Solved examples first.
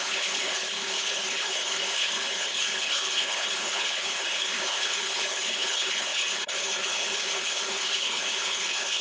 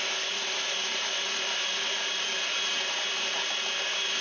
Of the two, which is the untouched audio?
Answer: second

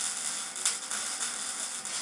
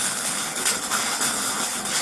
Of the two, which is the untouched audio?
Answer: first